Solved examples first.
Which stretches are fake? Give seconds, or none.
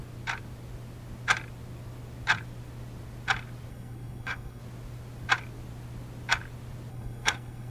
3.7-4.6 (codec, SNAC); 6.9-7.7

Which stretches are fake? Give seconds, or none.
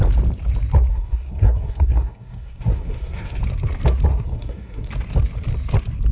0.9-3.4 (codec, SNAC); 4.1-4.9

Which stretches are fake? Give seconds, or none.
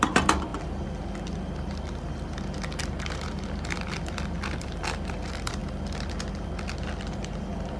0.0-0.5 (vocoder, BigVGAN v2); 2.8-5.6; 7.0-7.8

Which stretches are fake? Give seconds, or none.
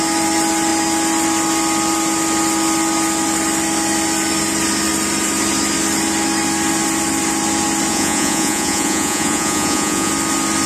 7.9-10.1 (vocoder, Vocos)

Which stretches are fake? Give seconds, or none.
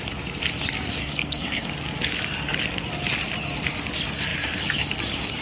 1.0-1.7 (codec, SNAC)